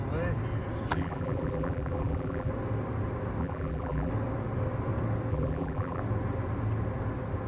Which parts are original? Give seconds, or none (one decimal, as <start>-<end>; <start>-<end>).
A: 0.0-0.9; 2.5-3.4; 4.1-5.3; 6.0-7.5